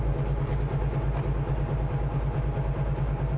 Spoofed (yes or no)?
no